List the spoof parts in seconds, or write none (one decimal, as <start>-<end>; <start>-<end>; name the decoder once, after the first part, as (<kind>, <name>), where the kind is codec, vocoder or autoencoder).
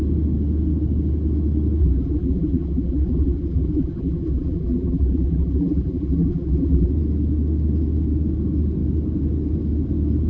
1.8-6.9 (vocoder, BigVGAN v2)